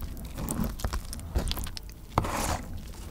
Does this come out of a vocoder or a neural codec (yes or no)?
no